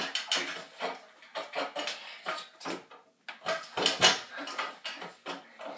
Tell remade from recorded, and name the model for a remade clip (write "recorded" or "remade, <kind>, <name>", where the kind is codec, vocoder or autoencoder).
recorded